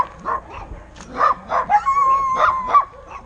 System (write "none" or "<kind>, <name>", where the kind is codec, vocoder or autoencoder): none